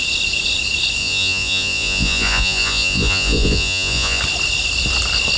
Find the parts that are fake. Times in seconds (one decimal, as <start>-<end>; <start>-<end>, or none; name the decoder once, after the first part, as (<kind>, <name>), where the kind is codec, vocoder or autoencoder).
1.0-4.2 (vocoder, Vocos)